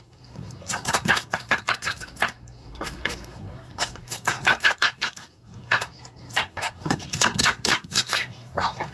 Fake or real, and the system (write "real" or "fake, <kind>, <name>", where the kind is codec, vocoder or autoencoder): fake, codec, SNAC